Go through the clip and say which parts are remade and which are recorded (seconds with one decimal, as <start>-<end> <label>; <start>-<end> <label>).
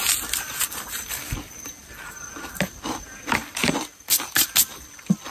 0.0-5.3 recorded